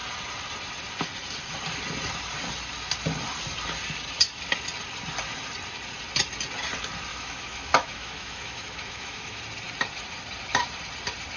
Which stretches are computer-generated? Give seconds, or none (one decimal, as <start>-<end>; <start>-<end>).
7.1-9.4